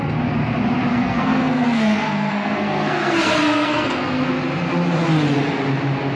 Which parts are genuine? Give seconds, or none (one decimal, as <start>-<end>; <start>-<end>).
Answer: 0.0-0.9; 4.3-6.2